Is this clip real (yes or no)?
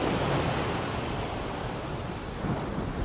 yes